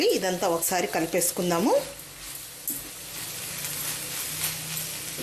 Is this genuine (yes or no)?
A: yes